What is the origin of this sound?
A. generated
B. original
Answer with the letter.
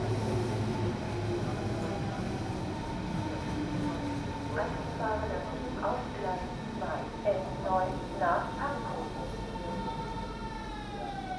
B